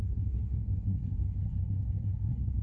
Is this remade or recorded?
remade